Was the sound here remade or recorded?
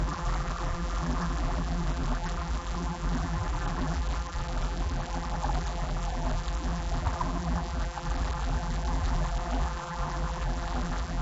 remade